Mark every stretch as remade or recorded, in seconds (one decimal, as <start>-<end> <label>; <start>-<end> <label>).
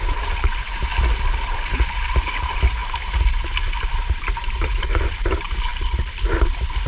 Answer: 0.0-0.7 remade; 0.7-1.7 recorded; 1.7-2.8 remade; 2.8-3.9 recorded; 3.9-5.7 remade; 5.7-6.9 recorded